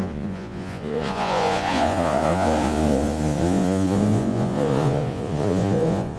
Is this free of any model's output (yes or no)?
no